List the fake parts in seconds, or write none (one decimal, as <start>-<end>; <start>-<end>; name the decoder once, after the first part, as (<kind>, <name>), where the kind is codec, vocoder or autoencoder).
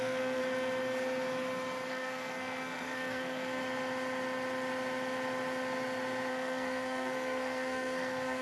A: 0.0-0.4 (codec, SNAC); 1.9-3.6; 6.3-8.4